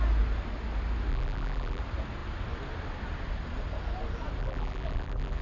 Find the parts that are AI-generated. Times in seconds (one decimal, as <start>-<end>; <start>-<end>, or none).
1.1-1.8; 4.4-5.4